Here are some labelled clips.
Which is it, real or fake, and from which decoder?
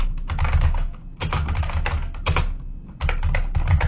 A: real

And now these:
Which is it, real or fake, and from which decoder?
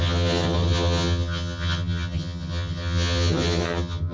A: fake, vocoder, HiFi-GAN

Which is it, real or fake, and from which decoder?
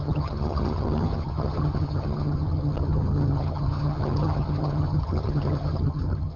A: fake, vocoder, HiFi-GAN